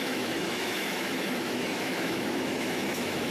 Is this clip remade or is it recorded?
remade